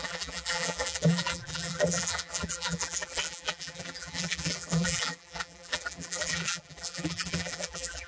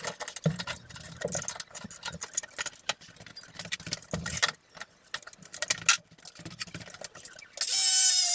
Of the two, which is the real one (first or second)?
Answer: second